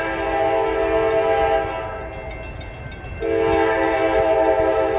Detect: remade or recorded recorded